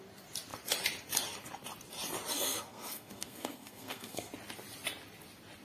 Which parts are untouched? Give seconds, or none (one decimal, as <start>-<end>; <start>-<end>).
0.0-2.3; 4.3-5.6